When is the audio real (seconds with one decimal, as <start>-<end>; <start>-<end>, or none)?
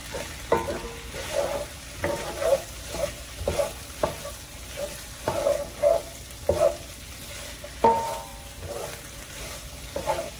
0.0-10.4